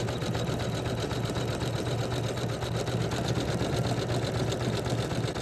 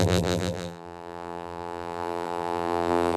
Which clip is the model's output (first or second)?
second